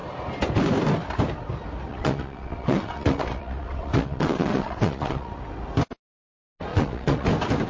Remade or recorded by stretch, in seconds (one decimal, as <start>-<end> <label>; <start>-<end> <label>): 0.0-1.9 recorded; 1.9-5.4 remade; 5.4-6.7 recorded; 6.7-7.3 remade; 7.3-7.7 recorded